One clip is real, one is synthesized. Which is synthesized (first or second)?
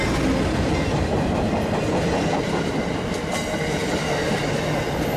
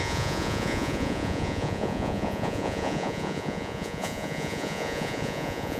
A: second